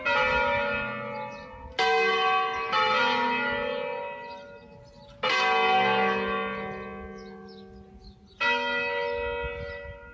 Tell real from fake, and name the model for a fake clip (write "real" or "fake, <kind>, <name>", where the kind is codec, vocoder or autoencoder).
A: real